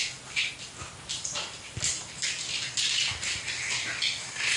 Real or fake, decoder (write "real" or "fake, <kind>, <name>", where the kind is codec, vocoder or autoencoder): real